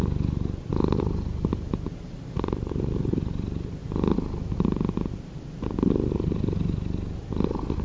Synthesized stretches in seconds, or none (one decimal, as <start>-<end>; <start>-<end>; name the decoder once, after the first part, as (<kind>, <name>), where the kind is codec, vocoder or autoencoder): 0.7-2.9 (vocoder, BigVGAN v2)